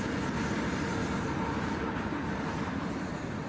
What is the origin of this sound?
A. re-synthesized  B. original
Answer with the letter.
B